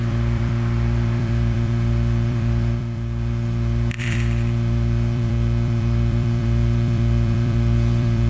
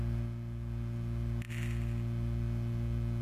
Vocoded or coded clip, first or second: first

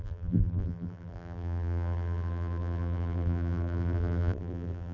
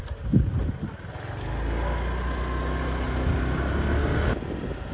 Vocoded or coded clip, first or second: first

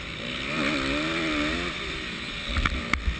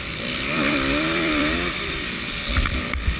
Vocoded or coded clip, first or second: second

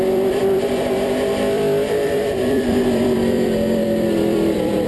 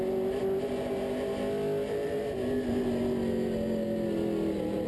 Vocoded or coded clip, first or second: first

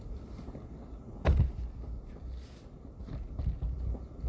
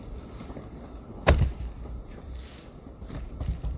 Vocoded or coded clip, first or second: second